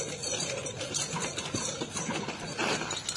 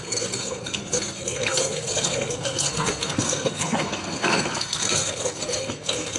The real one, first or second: first